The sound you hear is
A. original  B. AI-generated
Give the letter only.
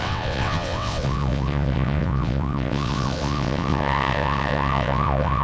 B